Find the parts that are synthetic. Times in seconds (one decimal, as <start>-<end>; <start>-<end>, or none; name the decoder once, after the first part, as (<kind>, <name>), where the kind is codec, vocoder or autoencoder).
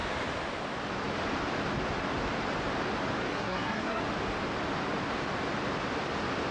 3.3-4.0 (codec, SNAC)